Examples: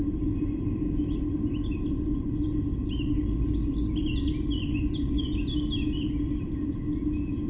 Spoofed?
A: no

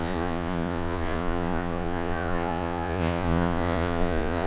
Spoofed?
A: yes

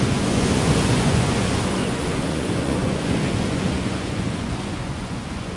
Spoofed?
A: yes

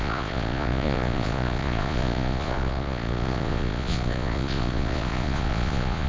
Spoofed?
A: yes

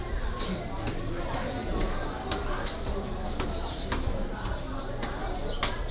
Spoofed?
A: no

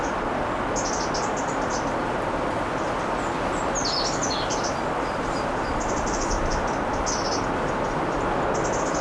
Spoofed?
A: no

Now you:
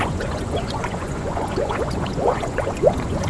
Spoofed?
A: yes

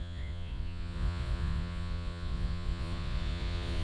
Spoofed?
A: yes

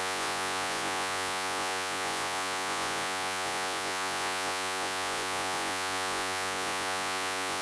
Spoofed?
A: yes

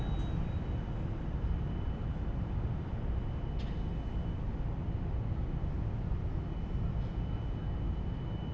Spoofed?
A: no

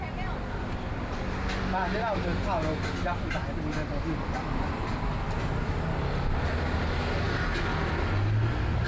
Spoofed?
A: no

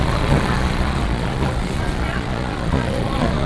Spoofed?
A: yes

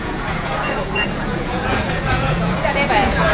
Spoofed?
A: yes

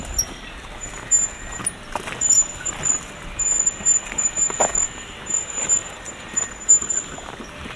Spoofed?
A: no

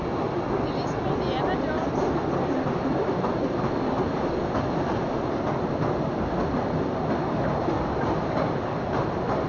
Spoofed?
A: no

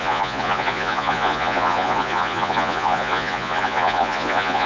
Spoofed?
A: yes